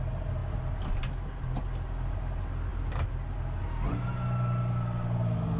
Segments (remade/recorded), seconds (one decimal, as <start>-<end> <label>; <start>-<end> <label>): 0.0-5.6 recorded